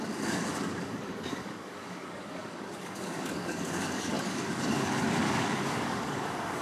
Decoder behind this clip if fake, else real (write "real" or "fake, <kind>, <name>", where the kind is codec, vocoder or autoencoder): fake, codec, DAC